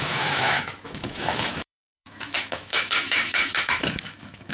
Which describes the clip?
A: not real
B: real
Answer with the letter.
A